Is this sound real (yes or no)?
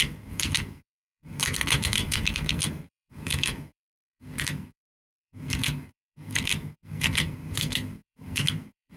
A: no